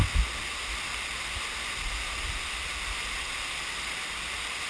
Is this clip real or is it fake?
real